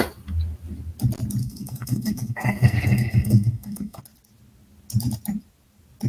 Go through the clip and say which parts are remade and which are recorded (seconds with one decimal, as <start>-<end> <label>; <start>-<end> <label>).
0.0-1.4 recorded; 1.4-4.0 remade; 4.0-6.1 recorded